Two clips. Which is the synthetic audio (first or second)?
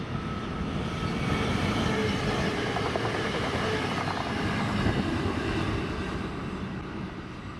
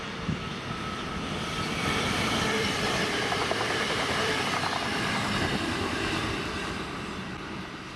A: second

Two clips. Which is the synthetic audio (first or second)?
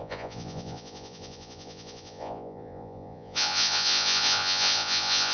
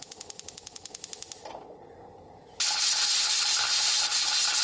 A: first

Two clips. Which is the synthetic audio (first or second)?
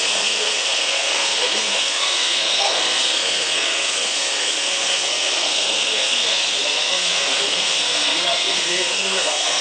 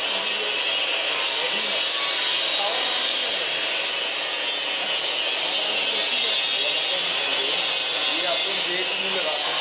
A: first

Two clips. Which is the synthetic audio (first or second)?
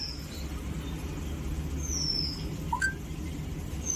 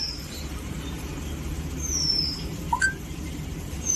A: second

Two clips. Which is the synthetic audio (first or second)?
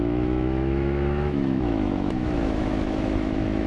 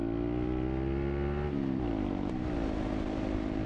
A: first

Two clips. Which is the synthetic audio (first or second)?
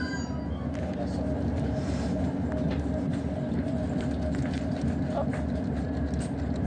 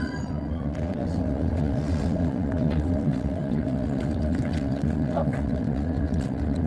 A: second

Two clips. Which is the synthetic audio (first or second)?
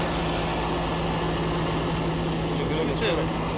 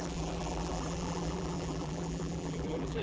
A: second